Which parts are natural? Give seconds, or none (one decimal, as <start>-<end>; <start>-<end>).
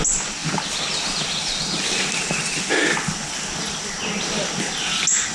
0.0-5.3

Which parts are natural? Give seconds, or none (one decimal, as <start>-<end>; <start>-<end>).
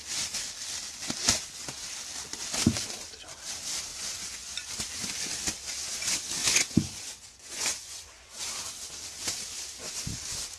0.0-3.9; 4.7-6.4; 8.4-10.6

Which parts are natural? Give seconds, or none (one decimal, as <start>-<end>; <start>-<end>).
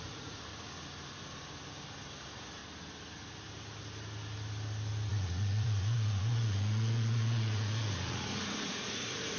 0.5-2.2; 2.6-5.1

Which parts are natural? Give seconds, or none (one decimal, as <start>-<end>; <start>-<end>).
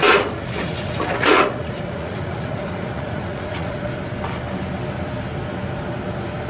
3.9-6.5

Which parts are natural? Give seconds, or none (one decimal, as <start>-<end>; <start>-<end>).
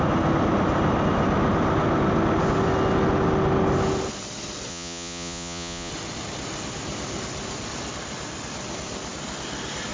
0.0-4.7; 5.9-9.9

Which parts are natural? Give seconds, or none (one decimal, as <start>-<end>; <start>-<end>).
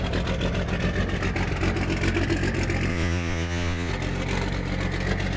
0.0-2.9; 3.9-5.4